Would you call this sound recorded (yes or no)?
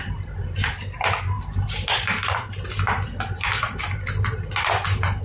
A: yes